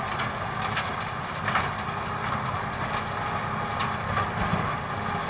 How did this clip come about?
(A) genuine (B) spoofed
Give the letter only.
A